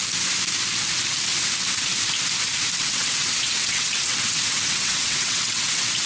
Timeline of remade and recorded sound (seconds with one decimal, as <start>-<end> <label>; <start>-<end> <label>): 0.0-2.8 recorded; 2.8-6.1 remade